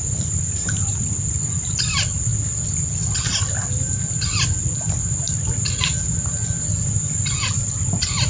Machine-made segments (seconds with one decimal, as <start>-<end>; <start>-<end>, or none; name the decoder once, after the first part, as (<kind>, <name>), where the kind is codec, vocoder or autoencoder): none